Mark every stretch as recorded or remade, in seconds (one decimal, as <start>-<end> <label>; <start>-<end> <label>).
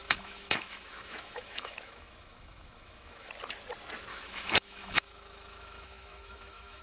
0.0-3.3 remade; 3.3-4.1 recorded; 4.1-6.8 remade